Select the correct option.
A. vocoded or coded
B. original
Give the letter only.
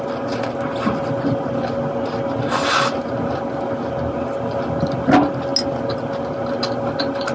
B